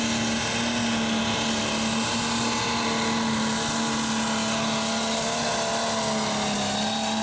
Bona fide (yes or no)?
yes